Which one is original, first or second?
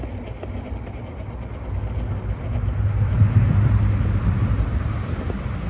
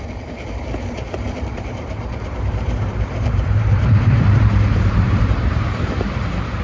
first